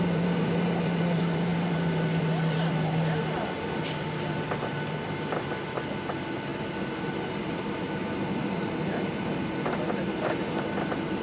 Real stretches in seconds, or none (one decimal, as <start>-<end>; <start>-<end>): 6.5-7.1